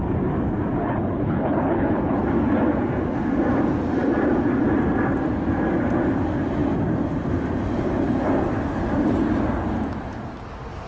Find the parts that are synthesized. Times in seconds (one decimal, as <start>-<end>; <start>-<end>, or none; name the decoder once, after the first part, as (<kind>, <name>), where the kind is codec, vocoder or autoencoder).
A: 0.8-2.2 (codec, HILCodec)